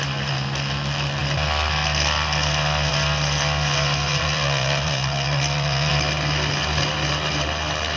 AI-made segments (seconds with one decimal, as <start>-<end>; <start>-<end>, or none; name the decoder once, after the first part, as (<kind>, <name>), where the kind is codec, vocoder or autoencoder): 4.1-5.9 (vocoder, Vocos)